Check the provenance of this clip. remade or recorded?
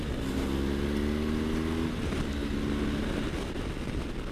recorded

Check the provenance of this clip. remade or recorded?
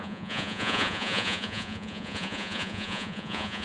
remade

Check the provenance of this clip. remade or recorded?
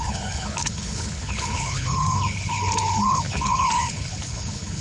remade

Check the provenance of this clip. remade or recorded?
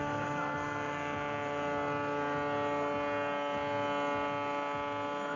recorded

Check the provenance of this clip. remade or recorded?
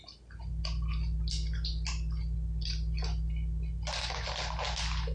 recorded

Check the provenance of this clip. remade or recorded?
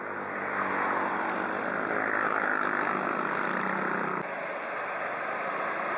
recorded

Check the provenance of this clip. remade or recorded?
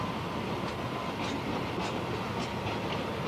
recorded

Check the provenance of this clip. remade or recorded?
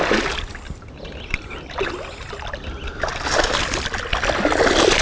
recorded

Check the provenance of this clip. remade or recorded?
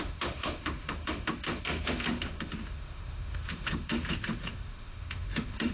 remade